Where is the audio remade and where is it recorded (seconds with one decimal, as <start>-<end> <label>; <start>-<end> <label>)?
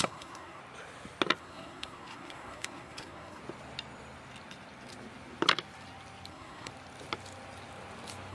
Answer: 0.0-0.6 remade; 0.6-1.4 recorded; 1.4-3.4 remade; 3.4-6.3 recorded; 6.3-6.7 remade; 6.7-8.3 recorded